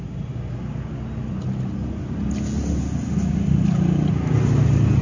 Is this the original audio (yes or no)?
yes